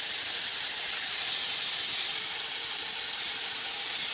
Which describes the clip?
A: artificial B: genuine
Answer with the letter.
B